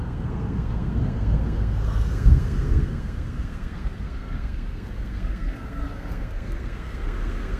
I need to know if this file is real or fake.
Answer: fake